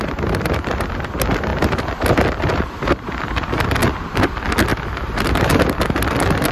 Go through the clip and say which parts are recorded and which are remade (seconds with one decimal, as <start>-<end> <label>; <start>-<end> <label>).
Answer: 0.0-3.8 recorded; 3.8-4.3 remade; 4.3-4.7 recorded; 4.7-5.3 remade; 5.3-6.5 recorded